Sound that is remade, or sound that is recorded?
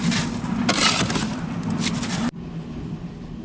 recorded